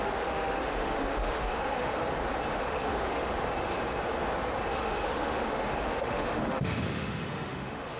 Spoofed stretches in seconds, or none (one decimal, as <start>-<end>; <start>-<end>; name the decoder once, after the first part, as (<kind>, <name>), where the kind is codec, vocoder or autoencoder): 0.0-2.0 (autoencoder, DAC-VAE); 2.5-3.3; 4.7-8.0